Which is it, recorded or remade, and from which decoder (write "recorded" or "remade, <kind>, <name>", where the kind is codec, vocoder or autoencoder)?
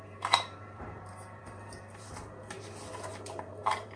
remade, vocoder, BigVGAN v2